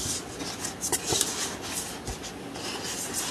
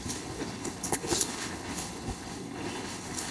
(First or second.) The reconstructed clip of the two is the second